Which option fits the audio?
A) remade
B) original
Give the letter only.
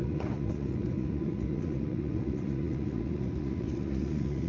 A